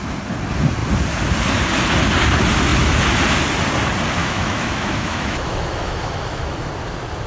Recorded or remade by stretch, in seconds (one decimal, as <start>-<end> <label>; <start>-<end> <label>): 0.0-4.2 recorded; 4.2-6.7 remade; 6.7-7.3 recorded